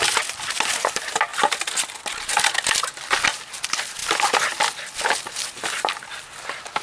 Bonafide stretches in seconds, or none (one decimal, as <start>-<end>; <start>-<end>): 0.0-6.8